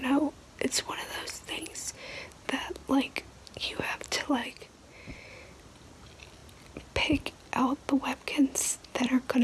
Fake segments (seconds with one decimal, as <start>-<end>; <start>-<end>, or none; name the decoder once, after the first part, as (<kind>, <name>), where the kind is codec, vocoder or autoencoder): 4.4-5.3 (vocoder, Vocos)